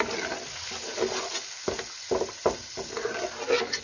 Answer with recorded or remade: recorded